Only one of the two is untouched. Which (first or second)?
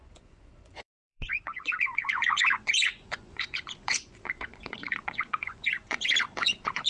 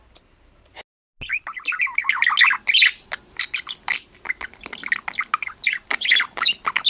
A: second